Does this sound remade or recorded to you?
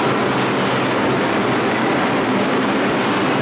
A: recorded